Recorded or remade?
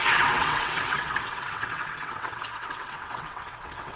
remade